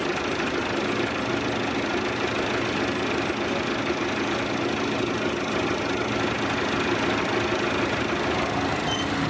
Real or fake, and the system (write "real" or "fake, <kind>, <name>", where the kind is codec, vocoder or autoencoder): real